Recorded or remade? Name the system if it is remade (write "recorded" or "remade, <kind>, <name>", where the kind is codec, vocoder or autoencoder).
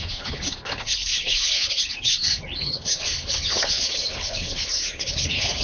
remade, codec, HILCodec